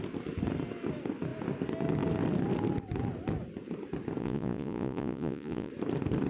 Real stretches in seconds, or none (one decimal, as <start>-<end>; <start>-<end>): 0.0-4.2; 5.7-6.3